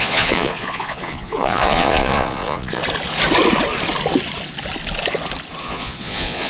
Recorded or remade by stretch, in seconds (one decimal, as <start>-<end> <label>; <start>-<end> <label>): 0.0-2.8 remade; 2.8-5.6 recorded; 5.6-6.5 remade